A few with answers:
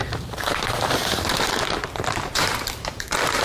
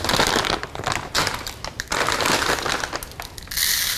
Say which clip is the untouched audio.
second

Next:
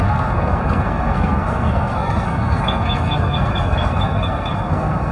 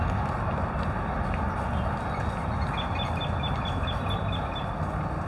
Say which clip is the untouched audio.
second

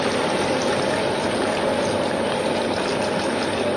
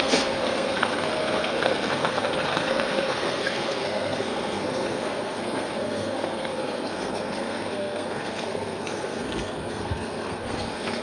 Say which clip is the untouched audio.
first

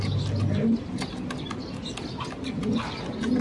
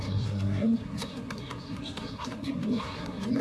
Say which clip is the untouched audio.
first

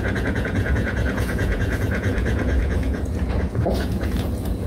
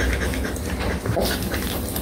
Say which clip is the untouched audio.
second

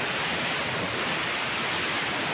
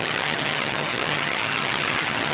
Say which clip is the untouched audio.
first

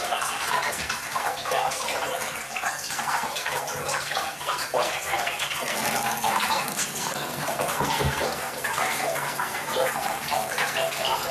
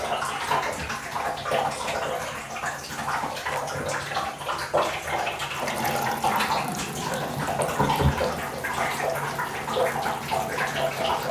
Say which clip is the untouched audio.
second